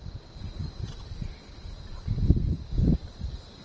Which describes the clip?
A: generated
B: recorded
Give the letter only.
B